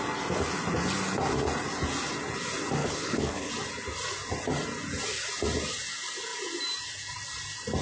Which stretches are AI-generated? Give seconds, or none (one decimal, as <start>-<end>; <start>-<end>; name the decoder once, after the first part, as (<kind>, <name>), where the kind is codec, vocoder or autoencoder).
2.8-3.5 (codec, HILCodec)